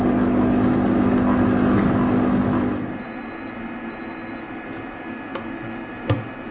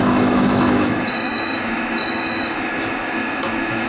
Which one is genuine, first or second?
first